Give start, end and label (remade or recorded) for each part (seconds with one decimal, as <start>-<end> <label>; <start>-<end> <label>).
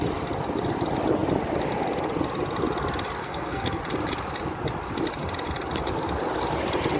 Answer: 0.0-3.2 recorded; 3.2-3.8 remade; 3.8-7.0 recorded